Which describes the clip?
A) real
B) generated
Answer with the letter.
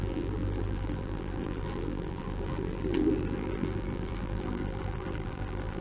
B